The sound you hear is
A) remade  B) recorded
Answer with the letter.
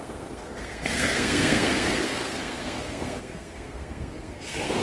A